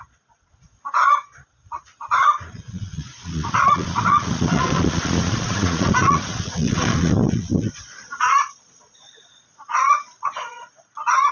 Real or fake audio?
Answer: fake